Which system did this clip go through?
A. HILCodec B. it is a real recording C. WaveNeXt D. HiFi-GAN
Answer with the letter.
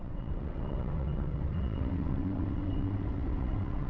C